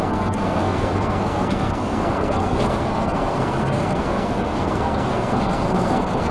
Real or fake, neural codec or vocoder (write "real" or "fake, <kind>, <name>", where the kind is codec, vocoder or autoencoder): fake, codec, SNAC